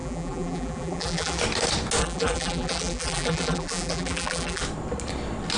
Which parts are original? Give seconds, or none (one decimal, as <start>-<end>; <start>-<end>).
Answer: 1.4-2.0; 4.6-5.6